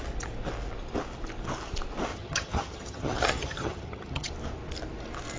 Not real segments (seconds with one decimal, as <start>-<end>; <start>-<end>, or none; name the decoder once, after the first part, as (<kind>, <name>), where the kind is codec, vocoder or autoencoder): 2.1-4.3 (vocoder, HiFi-GAN)